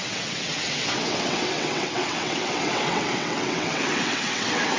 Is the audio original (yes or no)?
no